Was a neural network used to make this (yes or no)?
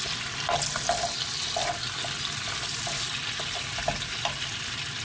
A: no